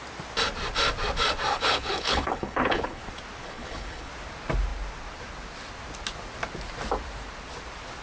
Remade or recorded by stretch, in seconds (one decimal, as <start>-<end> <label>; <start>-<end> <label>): 0.0-1.5 recorded; 1.5-3.0 remade; 3.0-3.4 recorded; 3.4-4.1 remade; 4.1-8.0 recorded

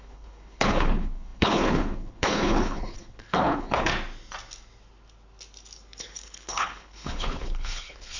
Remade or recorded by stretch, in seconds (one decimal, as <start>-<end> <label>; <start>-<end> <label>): 0.0-3.9 remade; 3.9-6.0 recorded; 6.0-8.2 remade